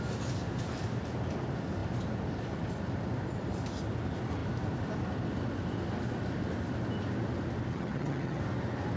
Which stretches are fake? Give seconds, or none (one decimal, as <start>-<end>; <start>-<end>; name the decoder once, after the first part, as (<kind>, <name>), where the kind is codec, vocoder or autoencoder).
7.7-8.4 (vocoder, HiFi-GAN)